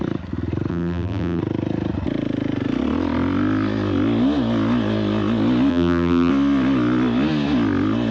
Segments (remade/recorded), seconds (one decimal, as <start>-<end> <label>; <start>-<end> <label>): 0.0-0.7 recorded; 0.7-1.4 remade; 1.4-5.7 recorded; 5.7-6.3 remade; 6.3-8.1 recorded